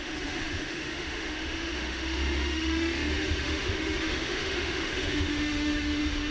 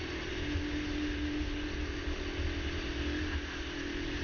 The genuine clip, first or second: second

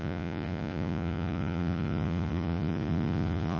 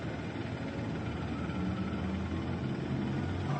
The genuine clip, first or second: second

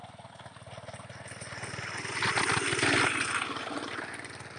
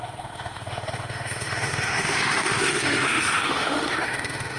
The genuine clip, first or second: first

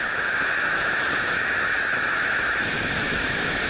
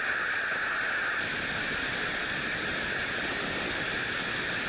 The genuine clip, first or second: second